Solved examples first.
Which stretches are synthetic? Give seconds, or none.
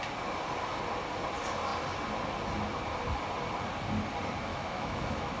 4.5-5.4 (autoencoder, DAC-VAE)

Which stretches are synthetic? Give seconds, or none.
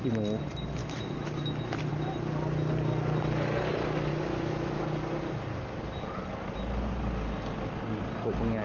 0.8-1.9 (autoencoder, DAC-VAE); 4.1-4.8